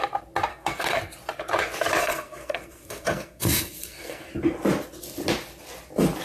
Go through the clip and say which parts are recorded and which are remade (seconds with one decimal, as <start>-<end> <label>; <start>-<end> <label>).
0.0-0.5 recorded; 0.5-1.0 remade; 1.0-2.0 recorded; 2.0-4.3 remade; 4.3-6.2 recorded